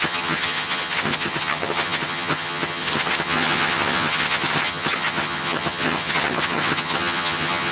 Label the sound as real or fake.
fake